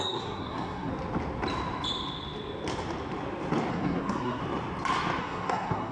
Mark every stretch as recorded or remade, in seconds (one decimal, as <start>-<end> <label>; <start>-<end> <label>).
0.0-0.9 remade; 0.9-3.7 recorded; 3.7-4.4 remade; 4.4-5.2 recorded; 5.2-5.9 remade